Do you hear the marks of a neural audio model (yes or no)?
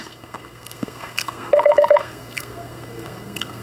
yes